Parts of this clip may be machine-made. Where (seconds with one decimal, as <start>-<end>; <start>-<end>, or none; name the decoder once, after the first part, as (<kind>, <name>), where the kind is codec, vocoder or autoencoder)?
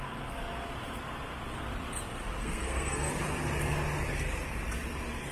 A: 2.4-3.1 (codec, SNAC)